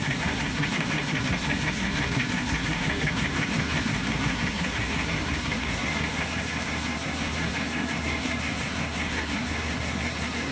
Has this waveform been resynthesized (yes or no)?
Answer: yes